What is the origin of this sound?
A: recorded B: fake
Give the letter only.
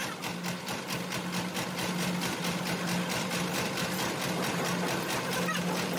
A